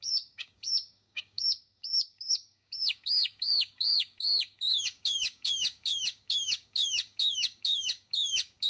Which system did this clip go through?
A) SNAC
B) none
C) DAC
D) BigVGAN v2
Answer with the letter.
C